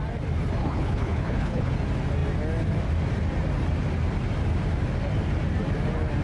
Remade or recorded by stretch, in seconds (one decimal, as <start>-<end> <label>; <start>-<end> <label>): 0.0-0.6 recorded; 0.6-1.7 remade; 1.7-6.2 recorded